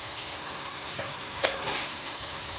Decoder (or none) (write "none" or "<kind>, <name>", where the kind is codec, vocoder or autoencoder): codec, SNAC